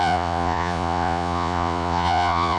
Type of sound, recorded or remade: remade